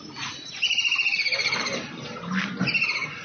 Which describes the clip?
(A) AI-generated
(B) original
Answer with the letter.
B